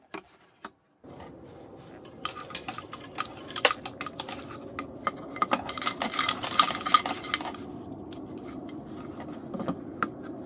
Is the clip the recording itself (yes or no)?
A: yes